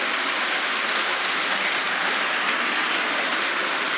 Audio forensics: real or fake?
real